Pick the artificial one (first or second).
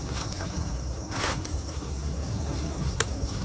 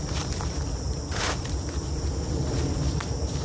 first